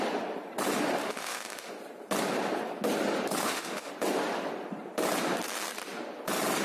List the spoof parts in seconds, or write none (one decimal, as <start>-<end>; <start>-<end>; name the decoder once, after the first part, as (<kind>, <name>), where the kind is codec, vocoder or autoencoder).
1.0-1.7 (autoencoder, DAC-VAE); 3.4-3.9